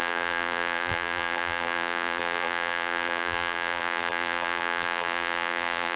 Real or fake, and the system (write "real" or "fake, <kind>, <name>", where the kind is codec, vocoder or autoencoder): fake, vocoder, BigVGAN v2